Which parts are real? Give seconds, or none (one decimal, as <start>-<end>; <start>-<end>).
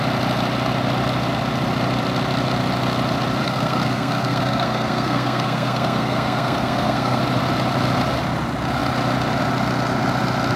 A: 0.0-3.4; 7.2-10.6